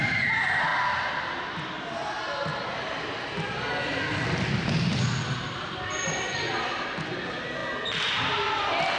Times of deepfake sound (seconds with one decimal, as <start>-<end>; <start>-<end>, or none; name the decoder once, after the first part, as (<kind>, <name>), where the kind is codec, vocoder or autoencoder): none